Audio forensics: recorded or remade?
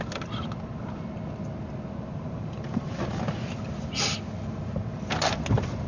recorded